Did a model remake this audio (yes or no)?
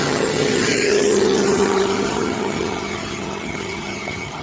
yes